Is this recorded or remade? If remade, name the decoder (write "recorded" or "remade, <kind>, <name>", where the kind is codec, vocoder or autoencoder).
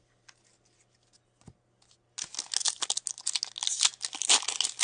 recorded